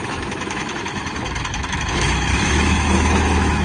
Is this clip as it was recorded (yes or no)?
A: no